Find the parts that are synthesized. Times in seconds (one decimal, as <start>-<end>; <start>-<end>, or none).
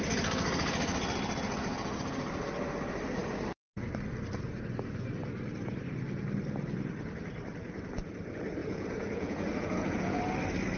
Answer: 8.6-10.2